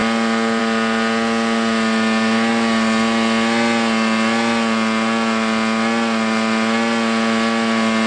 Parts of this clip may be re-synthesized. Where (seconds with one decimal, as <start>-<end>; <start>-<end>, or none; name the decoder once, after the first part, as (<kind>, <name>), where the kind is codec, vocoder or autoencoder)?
none